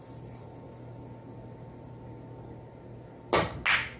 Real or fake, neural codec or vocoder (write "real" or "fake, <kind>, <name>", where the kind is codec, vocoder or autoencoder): real